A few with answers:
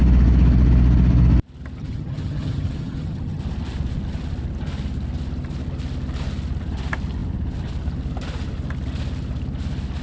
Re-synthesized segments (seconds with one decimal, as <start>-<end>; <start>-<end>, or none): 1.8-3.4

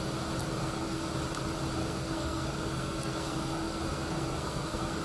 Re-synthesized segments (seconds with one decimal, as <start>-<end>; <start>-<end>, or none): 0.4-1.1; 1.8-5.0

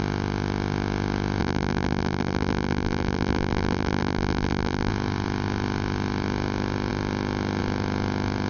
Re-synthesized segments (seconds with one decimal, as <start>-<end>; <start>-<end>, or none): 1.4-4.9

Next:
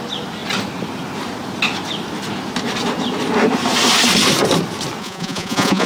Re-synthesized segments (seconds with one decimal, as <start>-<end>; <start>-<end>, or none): 5.0-5.9

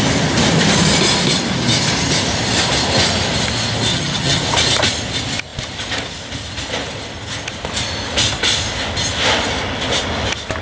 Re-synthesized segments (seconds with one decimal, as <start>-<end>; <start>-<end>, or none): 3.9-4.4

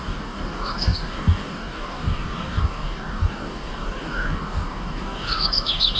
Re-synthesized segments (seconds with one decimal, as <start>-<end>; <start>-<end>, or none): 0.0-6.0

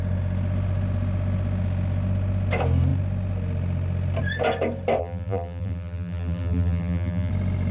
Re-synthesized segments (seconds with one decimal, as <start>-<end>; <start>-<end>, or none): 5.0-7.3

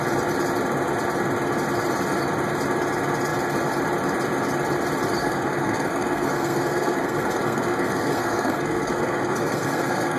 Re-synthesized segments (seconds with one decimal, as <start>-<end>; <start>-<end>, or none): 5.2-10.2